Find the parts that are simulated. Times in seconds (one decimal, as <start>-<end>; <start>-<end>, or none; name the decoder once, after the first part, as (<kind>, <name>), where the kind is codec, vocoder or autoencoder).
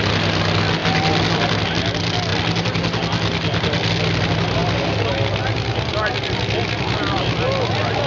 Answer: 0.8-1.6 (vocoder, BigVGAN v2); 4.6-5.9